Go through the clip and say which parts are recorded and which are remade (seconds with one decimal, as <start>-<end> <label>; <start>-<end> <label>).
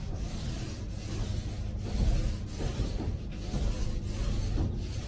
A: 0.0-5.1 recorded